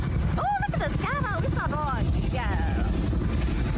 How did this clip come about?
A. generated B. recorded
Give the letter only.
B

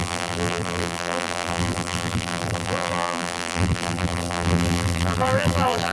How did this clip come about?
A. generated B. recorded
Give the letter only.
A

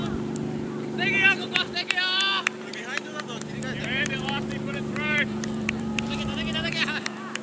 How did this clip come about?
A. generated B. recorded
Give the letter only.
A